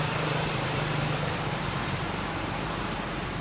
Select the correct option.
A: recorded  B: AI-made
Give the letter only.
A